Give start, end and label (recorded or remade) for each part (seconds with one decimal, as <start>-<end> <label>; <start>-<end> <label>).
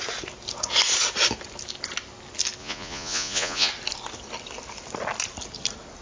0.0-2.6 recorded; 2.6-3.7 remade; 3.7-6.0 recorded